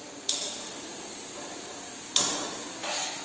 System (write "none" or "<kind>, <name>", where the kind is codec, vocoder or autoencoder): none